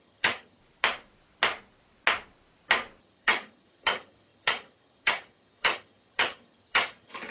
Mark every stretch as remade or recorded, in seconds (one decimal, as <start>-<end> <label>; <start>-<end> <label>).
0.0-0.6 remade; 0.6-3.0 recorded; 3.0-7.3 remade